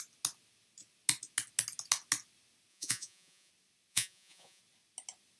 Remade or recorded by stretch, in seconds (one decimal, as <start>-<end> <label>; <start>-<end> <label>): 0.0-2.7 recorded; 2.7-3.5 remade; 3.5-3.9 recorded; 3.9-4.6 remade; 4.6-5.4 recorded